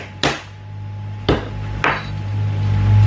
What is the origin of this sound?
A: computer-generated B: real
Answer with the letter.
B